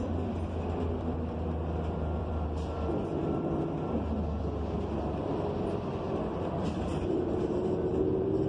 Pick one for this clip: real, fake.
fake